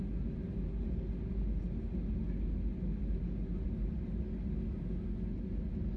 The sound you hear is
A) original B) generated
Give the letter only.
A